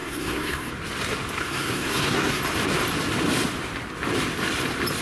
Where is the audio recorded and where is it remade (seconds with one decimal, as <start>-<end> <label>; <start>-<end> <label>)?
0.0-0.7 remade; 0.7-1.4 recorded; 1.4-2.4 remade; 2.4-5.0 recorded